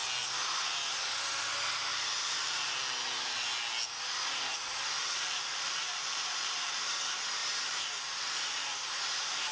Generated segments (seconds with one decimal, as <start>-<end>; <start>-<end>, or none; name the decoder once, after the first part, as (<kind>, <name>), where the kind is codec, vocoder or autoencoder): 1.9-2.7 (vocoder, BigVGAN v2); 5.0-6.9; 7.4-8.7